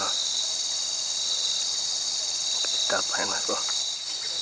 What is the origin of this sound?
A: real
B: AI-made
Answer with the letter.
A